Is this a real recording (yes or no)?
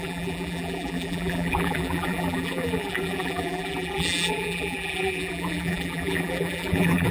no